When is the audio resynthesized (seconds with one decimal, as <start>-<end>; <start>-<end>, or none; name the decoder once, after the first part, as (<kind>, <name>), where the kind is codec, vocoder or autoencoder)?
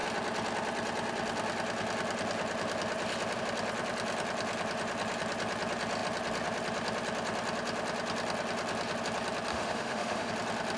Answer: 9.5-10.3 (autoencoder, DAC-VAE)